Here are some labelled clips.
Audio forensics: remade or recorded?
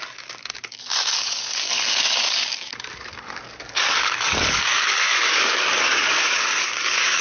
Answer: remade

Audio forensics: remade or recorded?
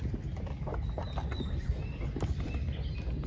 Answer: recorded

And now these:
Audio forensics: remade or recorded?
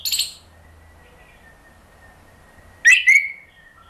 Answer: recorded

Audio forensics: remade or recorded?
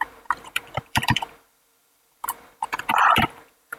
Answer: remade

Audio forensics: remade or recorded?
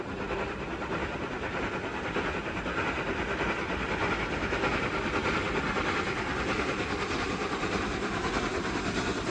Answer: recorded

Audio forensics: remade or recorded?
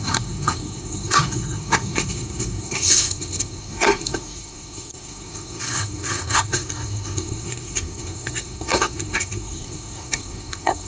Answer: remade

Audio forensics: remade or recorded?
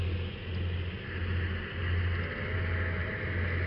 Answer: recorded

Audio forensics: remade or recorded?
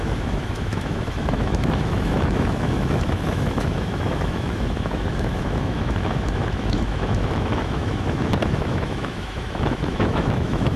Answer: remade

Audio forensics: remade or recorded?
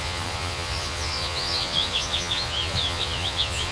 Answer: remade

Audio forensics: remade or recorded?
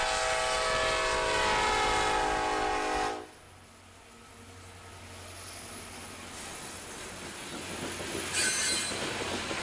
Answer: recorded